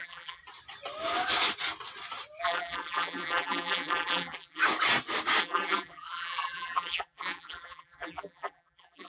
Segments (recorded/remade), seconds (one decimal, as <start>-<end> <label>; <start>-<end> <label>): 0.0-0.4 remade; 0.4-2.4 recorded; 2.4-4.6 remade; 4.6-5.4 recorded; 5.4-9.1 remade